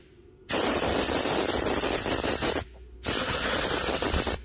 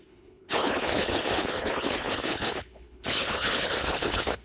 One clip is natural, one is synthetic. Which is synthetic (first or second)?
second